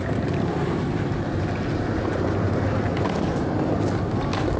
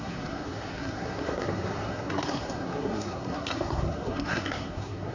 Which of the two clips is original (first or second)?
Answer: first